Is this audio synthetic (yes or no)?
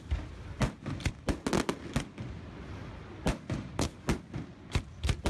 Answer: no